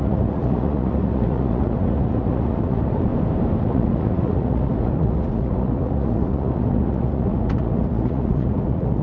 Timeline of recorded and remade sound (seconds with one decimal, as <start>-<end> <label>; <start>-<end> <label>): 0.0-3.1 remade; 3.1-3.6 recorded; 3.6-9.0 remade